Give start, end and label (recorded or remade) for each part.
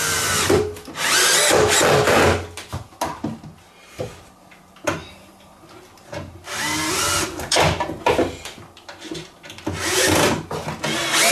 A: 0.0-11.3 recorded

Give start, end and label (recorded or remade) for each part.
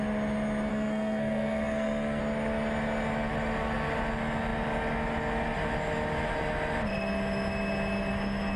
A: 0.0-0.7 recorded; 0.7-2.2 remade; 2.2-8.6 recorded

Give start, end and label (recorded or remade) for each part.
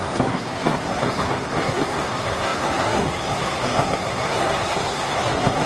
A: 0.0-5.7 remade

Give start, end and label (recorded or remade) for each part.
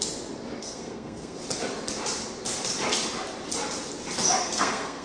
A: 0.0-0.6 recorded; 0.6-1.4 remade; 1.4-4.4 recorded; 4.4-5.0 remade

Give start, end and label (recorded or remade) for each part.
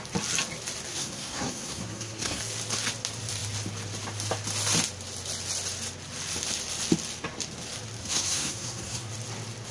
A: 0.0-0.9 recorded; 0.9-2.4 remade; 2.4-8.0 recorded; 8.0-9.1 remade; 9.1-9.7 recorded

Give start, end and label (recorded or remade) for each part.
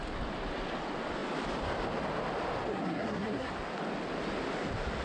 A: 0.0-2.7 recorded; 2.7-3.5 remade; 3.5-5.0 recorded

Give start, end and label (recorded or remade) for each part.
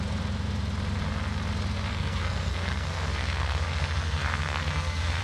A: 0.0-1.9 recorded; 1.9-5.2 remade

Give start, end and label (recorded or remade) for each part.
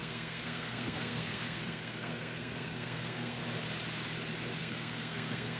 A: 0.0-3.4 remade; 3.4-4.6 recorded; 4.6-5.6 remade